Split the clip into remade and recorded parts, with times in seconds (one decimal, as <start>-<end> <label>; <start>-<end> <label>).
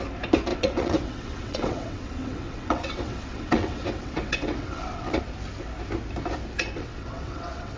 0.0-0.5 recorded; 0.5-5.2 remade; 5.2-6.8 recorded; 6.8-7.8 remade